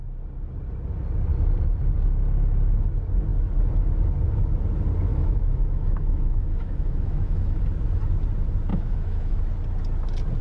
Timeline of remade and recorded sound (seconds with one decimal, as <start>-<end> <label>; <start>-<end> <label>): 0.0-5.1 recorded; 5.1-7.6 remade; 7.6-8.7 recorded; 8.7-9.4 remade; 9.4-10.4 recorded